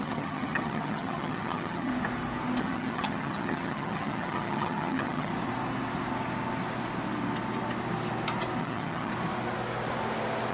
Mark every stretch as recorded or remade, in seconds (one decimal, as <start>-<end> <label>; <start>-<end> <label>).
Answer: 0.0-1.9 remade; 1.9-2.6 recorded; 2.6-5.3 remade; 5.3-8.6 recorded; 8.6-9.1 remade; 9.1-10.5 recorded